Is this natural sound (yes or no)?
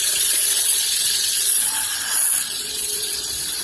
no